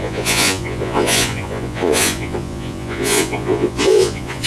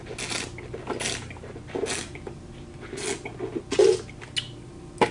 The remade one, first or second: first